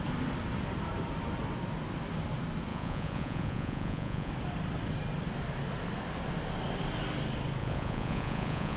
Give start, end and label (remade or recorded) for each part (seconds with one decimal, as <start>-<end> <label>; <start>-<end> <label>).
0.0-2.7 recorded; 2.7-4.3 remade; 4.3-7.6 recorded; 7.6-8.8 remade